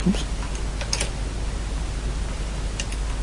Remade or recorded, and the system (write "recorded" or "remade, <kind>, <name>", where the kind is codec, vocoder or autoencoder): recorded